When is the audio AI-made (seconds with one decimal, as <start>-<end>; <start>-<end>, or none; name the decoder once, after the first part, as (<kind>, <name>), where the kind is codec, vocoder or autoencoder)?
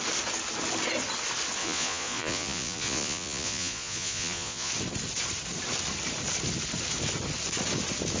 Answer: 1.6-4.7 (vocoder, Vocos)